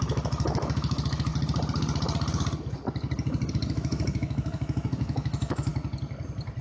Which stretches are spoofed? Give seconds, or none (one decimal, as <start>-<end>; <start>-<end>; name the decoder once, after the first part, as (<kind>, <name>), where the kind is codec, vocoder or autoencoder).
0.0-1.3 (autoencoder, DAC-VAE); 3.5-5.7